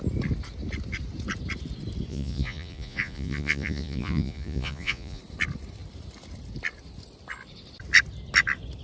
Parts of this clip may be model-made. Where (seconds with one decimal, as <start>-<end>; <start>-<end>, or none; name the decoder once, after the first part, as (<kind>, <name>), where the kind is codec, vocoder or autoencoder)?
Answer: 2.1-5.2 (vocoder, Vocos)